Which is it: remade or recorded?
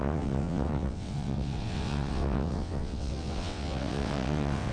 remade